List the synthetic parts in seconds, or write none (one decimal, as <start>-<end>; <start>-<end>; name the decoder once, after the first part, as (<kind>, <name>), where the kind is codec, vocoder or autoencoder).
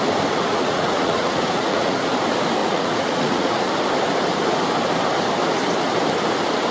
0.5-2.1 (vocoder, Vocos); 2.6-3.7